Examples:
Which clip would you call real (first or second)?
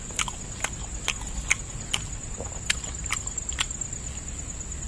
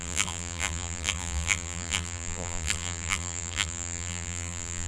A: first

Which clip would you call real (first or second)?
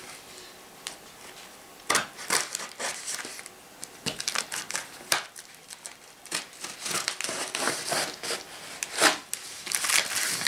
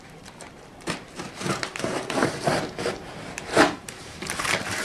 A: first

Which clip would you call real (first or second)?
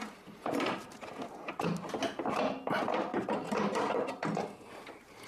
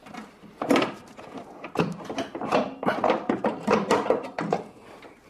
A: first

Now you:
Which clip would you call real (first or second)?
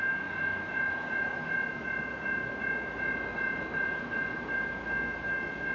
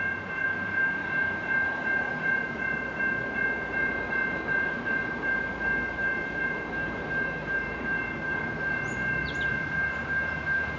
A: first